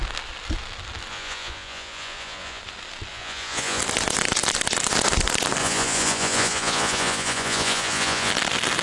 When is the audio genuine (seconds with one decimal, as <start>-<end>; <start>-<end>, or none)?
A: 0.0-1.1; 2.6-3.1; 3.8-5.6; 8.3-8.8